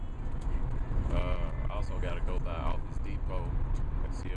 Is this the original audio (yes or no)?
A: yes